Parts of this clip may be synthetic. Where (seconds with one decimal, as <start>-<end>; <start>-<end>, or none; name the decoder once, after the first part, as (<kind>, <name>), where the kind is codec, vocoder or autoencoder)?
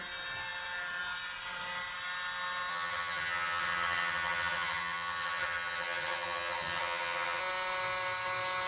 2.7-7.4 (vocoder, HiFi-GAN)